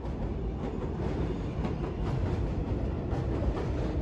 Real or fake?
real